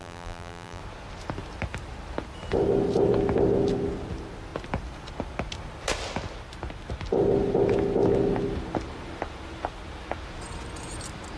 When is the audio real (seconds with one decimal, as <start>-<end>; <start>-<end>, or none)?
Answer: 0.8-11.4